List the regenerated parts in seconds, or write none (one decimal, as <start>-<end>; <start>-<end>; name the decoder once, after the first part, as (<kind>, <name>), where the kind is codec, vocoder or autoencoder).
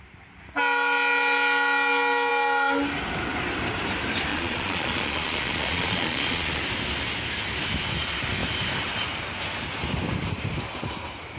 4.3-6.6 (vocoder, Vocos)